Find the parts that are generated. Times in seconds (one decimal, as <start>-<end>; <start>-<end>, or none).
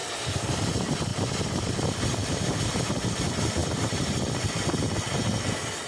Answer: 0.0-0.6; 1.1-3.1; 3.6-4.1